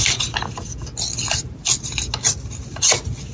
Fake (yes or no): no